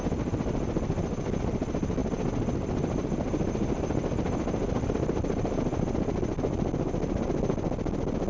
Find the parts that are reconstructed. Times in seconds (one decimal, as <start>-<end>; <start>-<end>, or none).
none